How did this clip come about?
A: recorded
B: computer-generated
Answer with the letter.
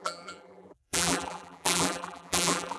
B